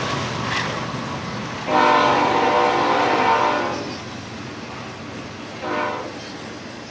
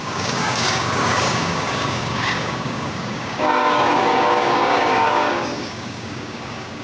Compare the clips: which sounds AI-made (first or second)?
second